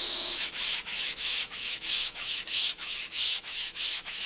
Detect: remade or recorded remade